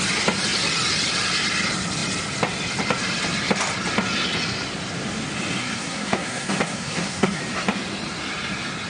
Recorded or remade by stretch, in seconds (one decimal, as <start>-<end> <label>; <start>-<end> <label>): 0.0-5.6 recorded; 5.6-7.4 remade; 7.4-8.9 recorded